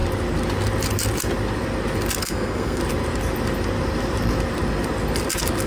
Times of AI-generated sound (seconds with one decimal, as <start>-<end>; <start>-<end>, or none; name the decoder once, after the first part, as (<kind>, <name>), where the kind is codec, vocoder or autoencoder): 2.2-2.8 (codec, SNAC)

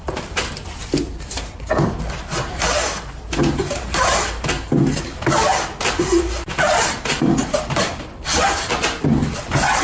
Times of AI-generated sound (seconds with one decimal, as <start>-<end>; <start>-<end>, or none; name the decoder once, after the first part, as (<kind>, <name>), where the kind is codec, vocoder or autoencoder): 0.0-8.3 (vocoder, BigVGAN v2)